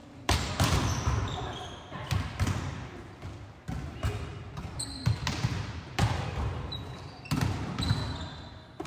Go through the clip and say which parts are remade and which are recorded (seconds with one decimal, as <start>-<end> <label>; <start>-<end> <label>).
0.0-3.2 remade; 3.2-4.3 recorded; 4.3-7.2 remade; 7.2-8.9 recorded